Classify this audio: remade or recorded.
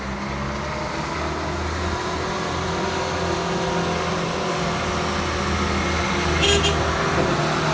recorded